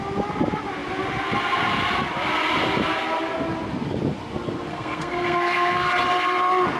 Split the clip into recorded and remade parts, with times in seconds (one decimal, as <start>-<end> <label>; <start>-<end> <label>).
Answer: 0.0-4.7 recorded; 4.7-5.9 remade; 5.9-6.8 recorded